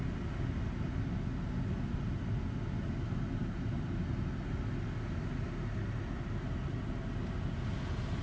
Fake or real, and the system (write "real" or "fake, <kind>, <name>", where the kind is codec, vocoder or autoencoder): real